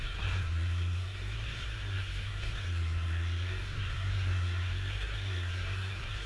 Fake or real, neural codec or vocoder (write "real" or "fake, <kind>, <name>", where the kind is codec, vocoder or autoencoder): fake, codec, SNAC